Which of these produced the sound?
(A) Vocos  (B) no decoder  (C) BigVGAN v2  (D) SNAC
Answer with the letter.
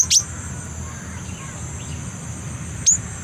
B